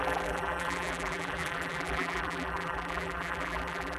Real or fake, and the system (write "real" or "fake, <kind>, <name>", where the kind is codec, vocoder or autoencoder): fake, vocoder, BigVGAN v2